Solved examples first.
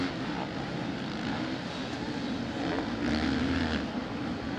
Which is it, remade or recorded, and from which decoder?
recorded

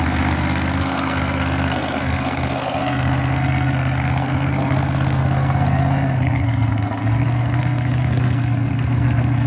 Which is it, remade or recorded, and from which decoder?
remade, codec, SNAC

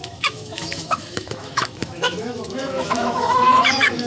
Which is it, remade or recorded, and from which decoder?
remade, autoencoder, DAC-VAE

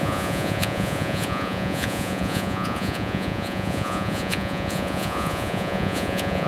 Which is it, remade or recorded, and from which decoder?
remade, vocoder, Vocos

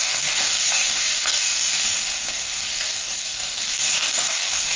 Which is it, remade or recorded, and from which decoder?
remade, codec, DAC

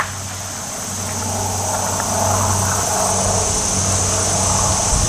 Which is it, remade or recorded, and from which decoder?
recorded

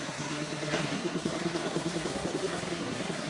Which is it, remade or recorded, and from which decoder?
remade, codec, SNAC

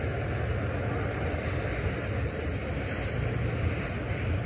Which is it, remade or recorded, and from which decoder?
recorded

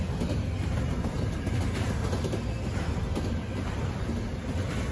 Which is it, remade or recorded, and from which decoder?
recorded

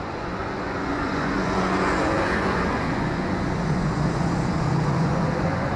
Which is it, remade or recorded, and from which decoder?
remade, vocoder, Vocos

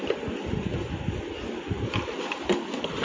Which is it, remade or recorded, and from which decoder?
recorded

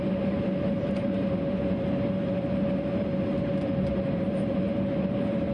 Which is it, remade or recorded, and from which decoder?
remade, vocoder, BigVGAN v2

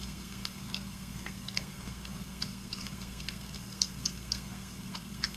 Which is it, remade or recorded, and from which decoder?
remade, codec, SNAC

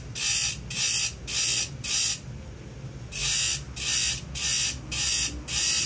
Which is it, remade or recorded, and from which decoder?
recorded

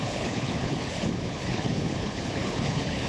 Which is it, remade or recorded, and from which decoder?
remade, codec, HILCodec